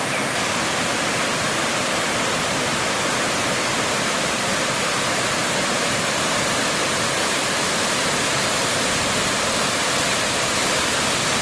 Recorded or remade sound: recorded